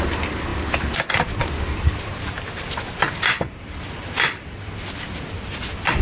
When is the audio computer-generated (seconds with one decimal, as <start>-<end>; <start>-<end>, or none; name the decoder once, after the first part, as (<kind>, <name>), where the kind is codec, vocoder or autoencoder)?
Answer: none